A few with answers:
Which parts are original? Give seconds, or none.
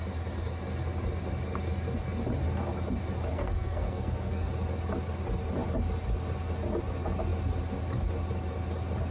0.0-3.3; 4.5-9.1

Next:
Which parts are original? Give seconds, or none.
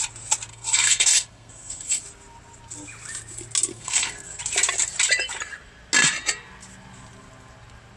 0.0-0.5; 2.0-3.7; 4.4-8.0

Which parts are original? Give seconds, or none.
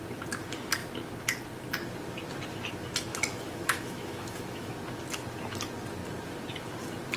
0.0-3.1; 4.7-7.2